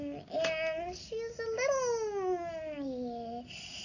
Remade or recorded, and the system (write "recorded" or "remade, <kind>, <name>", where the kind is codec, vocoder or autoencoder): recorded